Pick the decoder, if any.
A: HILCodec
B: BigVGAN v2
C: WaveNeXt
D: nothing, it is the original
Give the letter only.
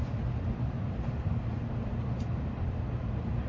D